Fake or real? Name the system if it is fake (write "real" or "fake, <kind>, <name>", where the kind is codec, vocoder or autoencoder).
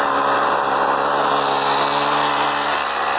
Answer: real